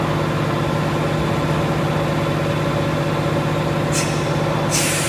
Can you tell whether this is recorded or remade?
recorded